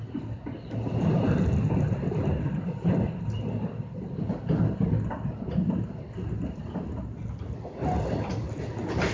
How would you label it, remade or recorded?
recorded